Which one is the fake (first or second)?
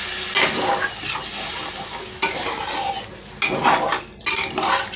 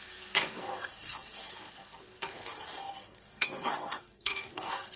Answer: second